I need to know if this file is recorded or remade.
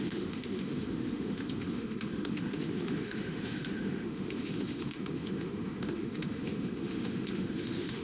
remade